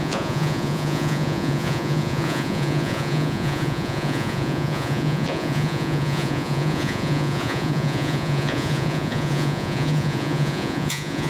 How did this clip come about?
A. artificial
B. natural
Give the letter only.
A